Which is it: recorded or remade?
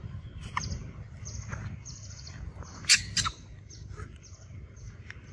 recorded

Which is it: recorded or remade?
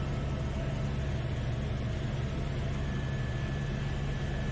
recorded